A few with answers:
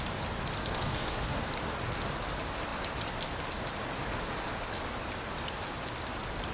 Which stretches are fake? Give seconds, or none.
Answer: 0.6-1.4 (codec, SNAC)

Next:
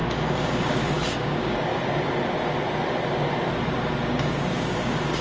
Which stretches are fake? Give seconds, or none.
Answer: 0.0-1.7 (codec, DAC); 4.0-5.2

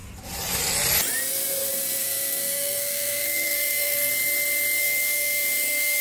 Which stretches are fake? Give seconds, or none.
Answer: 2.0-4.1 (codec, SNAC); 4.8-6.0

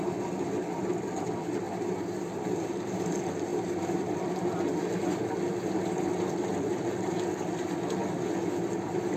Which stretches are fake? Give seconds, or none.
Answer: none

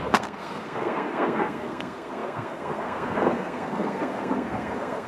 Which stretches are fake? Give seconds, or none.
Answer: 0.0-5.1 (codec, SNAC)

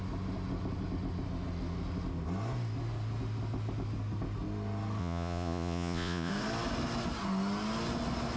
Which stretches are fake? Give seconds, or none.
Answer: 5.0-6.3 (vocoder, Vocos)

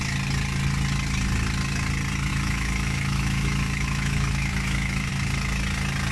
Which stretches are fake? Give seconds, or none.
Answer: 2.3-5.1 (autoencoder, DAC-VAE)

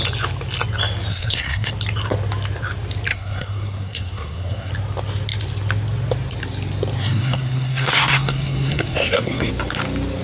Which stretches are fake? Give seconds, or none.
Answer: 1.1-1.7 (codec, SNAC); 3.1-4.7; 7.0-9.5